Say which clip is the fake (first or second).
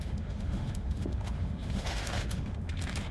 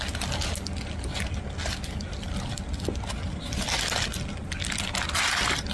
first